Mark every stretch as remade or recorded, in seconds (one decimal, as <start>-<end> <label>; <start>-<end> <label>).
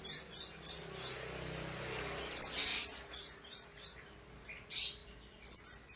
0.0-2.7 recorded; 2.7-3.9 remade; 3.9-5.0 recorded; 5.0-5.6 remade; 5.6-6.0 recorded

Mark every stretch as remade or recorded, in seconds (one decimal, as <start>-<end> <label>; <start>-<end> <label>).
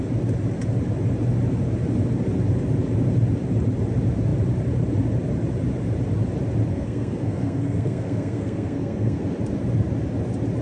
0.0-6.7 recorded; 6.7-9.2 remade; 9.2-10.6 recorded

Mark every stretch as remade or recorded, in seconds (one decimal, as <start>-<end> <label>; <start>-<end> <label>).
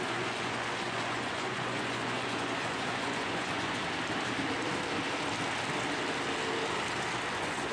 0.0-3.8 remade; 3.8-7.3 recorded; 7.3-7.7 remade